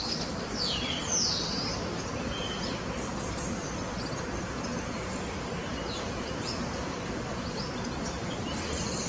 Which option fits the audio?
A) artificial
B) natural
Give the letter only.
B